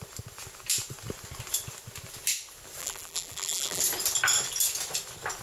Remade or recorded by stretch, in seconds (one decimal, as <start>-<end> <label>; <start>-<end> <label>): 0.0-2.8 recorded; 2.8-3.8 remade; 3.8-5.4 recorded